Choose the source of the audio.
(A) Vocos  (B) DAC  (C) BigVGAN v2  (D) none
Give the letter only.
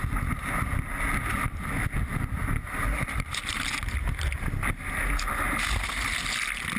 D